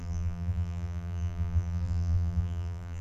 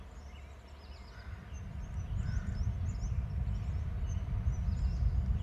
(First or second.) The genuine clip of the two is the second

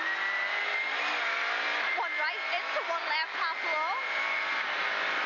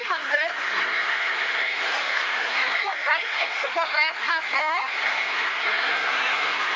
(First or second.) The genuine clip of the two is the first